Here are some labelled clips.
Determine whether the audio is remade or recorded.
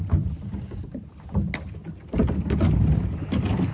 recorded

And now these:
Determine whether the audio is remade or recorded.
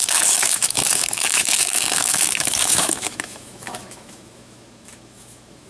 remade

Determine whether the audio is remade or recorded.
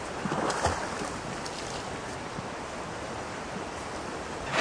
recorded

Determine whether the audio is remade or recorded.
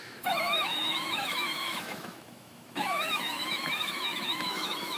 remade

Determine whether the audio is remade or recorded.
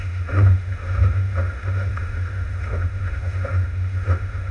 remade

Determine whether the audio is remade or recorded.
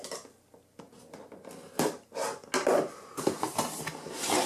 recorded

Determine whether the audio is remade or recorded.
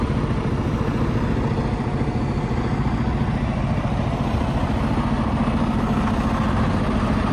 recorded